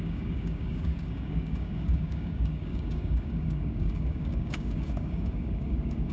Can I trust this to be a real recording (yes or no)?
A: no